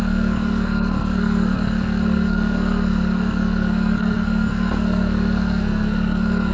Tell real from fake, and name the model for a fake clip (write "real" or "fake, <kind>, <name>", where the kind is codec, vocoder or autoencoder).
fake, codec, SNAC